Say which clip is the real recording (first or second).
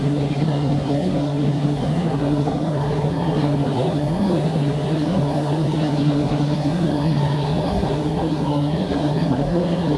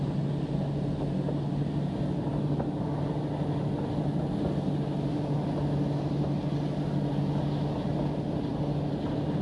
second